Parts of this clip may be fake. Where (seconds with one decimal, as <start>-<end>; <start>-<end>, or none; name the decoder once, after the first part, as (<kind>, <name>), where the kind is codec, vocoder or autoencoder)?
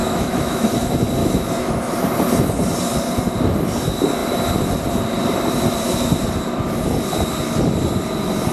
0.0-0.7 (autoencoder, DAC-VAE); 1.2-1.7